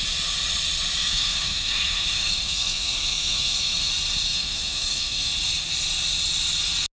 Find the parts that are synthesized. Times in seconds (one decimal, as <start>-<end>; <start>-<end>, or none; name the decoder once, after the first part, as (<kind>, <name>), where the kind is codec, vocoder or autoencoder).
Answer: 1.0-3.9 (autoencoder, DAC-VAE); 4.3-5.3